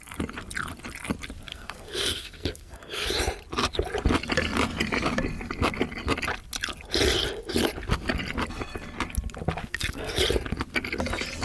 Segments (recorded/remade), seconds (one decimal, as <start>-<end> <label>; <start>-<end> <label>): 0.0-1.5 recorded; 1.5-3.1 remade; 3.1-9.6 recorded; 9.6-10.2 remade; 10.2-11.4 recorded